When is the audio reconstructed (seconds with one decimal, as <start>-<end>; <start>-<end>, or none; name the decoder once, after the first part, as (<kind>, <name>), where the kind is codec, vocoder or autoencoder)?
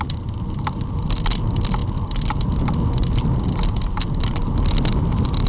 none